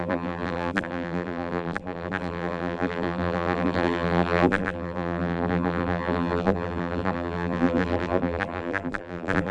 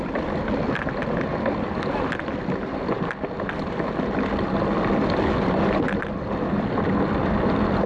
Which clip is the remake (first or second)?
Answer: first